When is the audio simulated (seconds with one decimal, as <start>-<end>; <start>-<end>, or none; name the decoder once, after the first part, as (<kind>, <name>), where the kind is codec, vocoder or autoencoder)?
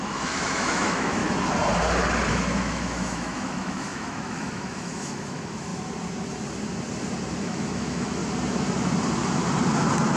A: 0.0-1.2 (autoencoder, DAC-VAE); 2.3-5.7; 7.4-8.2